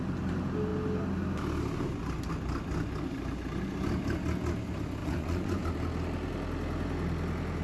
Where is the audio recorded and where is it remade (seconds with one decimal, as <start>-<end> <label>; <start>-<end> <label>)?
0.0-5.0 recorded; 5.0-5.6 remade; 5.6-7.6 recorded